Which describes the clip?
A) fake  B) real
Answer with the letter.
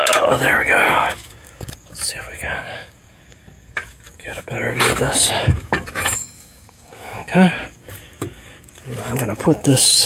A